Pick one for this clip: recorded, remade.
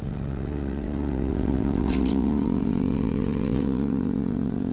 remade